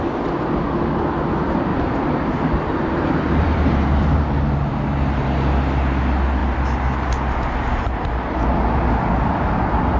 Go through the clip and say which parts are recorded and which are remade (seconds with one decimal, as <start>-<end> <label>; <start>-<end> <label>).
0.0-1.7 recorded; 1.7-4.4 remade; 4.4-10.0 recorded